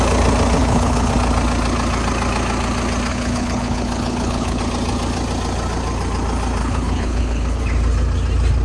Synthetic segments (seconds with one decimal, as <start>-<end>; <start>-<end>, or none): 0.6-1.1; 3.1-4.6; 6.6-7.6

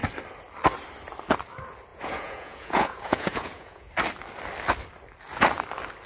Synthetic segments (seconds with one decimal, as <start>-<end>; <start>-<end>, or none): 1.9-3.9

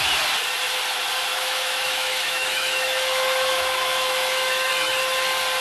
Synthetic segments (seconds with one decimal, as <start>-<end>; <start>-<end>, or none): 1.3-4.7

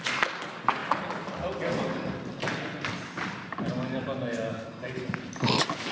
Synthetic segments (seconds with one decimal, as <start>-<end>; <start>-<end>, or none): none

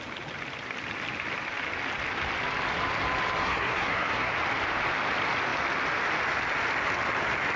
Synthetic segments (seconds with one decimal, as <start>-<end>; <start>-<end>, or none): 3.4-4.3

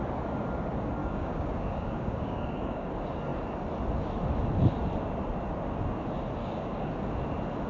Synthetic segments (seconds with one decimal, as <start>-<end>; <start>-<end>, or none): 1.0-2.9; 6.4-6.9